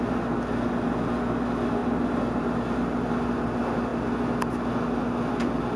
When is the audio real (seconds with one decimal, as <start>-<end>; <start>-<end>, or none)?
0.0-5.8